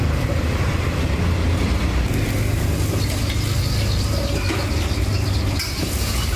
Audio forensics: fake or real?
real